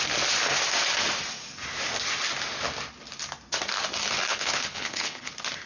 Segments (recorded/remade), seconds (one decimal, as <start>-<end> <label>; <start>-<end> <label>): 0.0-4.3 recorded; 4.3-5.3 remade; 5.3-5.7 recorded